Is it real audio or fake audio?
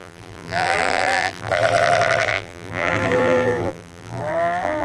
fake